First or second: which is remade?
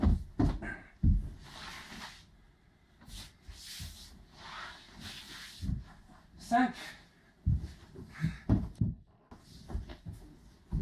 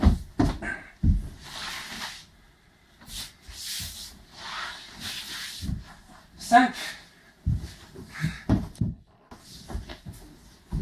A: second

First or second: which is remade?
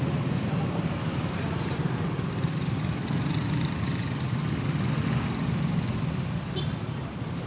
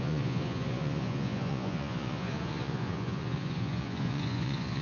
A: second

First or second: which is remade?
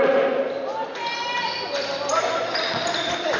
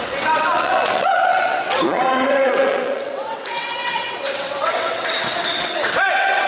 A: second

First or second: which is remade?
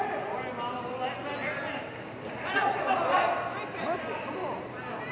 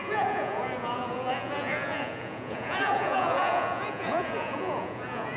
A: second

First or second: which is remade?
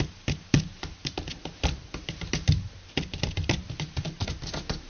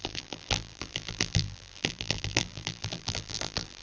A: second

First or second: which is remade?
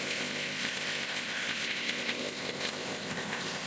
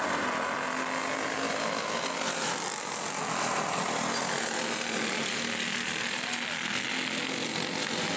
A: first